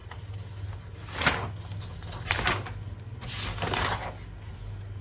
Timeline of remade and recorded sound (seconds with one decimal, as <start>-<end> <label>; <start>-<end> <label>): 0.0-5.0 recorded